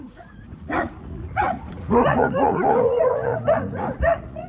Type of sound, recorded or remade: remade